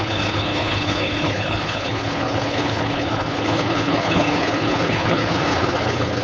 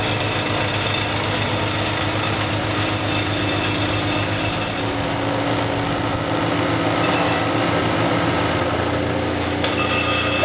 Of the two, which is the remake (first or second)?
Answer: first